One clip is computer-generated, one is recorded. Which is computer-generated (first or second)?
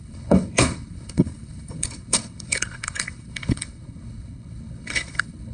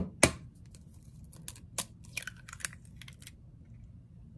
first